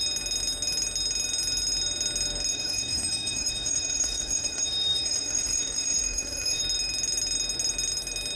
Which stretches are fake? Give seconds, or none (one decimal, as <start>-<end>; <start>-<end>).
2.5-6.6